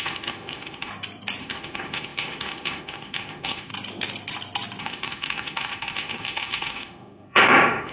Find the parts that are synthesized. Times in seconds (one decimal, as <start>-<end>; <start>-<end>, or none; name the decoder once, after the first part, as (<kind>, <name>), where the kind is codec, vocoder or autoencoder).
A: 0.0-0.9 (autoencoder, DAC-VAE); 1.4-3.7; 4.8-7.9